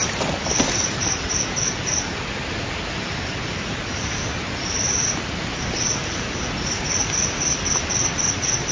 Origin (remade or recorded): recorded